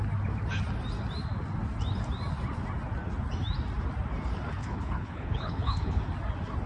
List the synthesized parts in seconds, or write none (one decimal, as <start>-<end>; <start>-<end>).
4.6-6.0